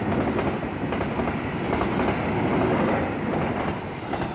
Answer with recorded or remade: recorded